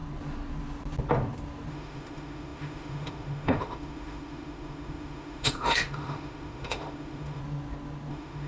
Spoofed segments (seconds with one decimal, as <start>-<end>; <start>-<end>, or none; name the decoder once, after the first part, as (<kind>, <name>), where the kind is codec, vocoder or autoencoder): 1.7-7.4 (autoencoder, DAC-VAE); 8.1-8.5